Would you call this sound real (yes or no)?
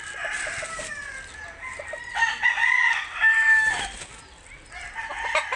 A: yes